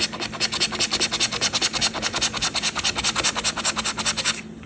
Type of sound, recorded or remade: recorded